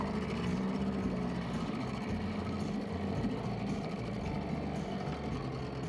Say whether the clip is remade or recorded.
recorded